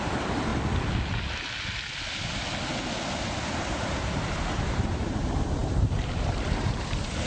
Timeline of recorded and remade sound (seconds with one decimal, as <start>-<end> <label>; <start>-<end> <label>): 0.0-0.5 remade; 0.5-3.2 recorded; 3.2-7.3 remade